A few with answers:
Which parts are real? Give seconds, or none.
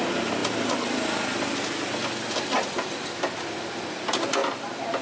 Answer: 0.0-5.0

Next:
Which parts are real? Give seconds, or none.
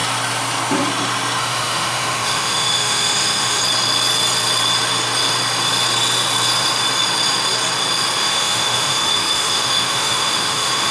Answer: 0.0-1.4; 3.6-8.2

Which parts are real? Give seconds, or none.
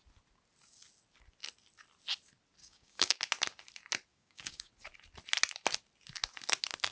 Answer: 0.0-2.6; 3.2-4.1; 4.7-6.9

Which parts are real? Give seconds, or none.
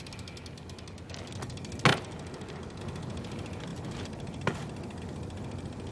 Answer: 0.0-5.9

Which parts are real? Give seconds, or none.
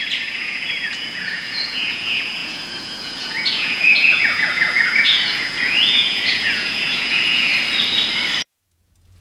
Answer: 7.5-8.4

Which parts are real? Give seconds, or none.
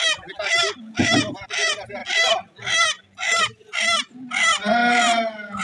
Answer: 0.0-5.6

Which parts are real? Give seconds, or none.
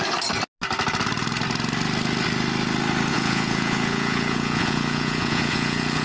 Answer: 0.0-3.1